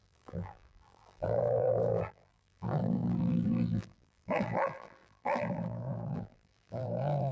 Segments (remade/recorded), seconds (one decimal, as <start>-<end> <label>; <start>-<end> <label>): 0.0-7.3 remade